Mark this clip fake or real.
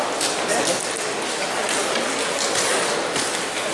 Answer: real